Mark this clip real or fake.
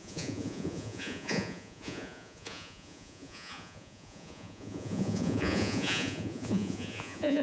fake